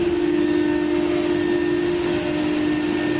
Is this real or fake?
real